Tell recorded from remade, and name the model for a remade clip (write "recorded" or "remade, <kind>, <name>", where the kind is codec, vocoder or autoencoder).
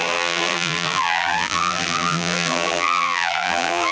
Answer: remade, vocoder, BigVGAN v2